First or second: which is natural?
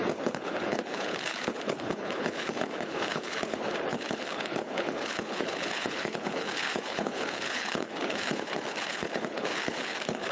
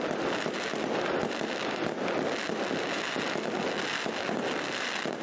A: second